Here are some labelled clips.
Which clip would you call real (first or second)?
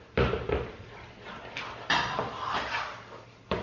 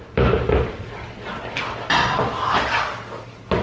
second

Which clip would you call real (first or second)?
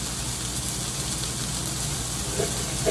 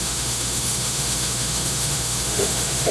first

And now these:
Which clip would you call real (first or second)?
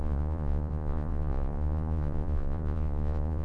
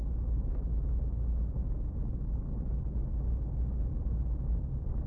second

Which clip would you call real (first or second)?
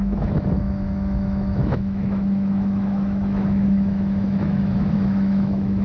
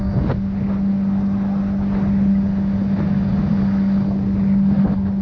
second